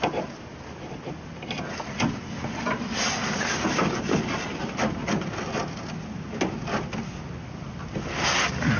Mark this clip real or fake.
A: real